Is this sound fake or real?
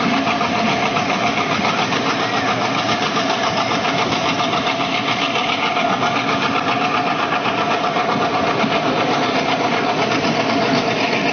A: real